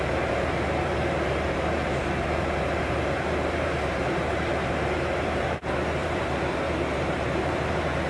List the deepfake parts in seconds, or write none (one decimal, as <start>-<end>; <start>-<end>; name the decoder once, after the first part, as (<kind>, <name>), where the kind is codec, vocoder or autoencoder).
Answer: 0.0-8.1 (vocoder, BigVGAN v2)